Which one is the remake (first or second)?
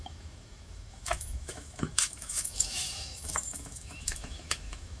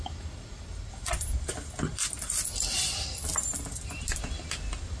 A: first